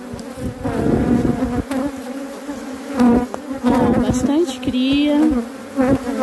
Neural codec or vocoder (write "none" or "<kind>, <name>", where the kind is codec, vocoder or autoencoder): none